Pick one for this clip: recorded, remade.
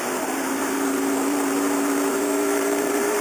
remade